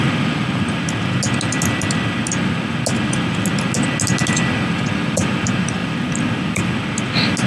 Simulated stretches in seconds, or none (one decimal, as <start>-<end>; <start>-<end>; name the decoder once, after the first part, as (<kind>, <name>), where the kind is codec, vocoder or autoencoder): 5.8-6.7 (vocoder, BigVGAN v2)